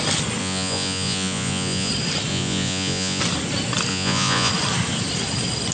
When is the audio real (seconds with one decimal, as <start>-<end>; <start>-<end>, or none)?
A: 0.0-0.4; 1.9-2.3; 3.2-3.9; 4.5-5.7